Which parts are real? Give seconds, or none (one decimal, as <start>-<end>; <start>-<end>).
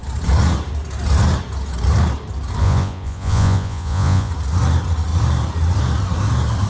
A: 0.0-2.6; 4.3-6.7